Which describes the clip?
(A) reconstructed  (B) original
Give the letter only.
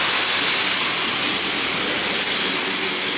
B